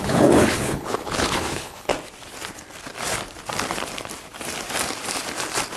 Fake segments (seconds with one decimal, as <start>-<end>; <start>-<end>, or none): 0.0-1.9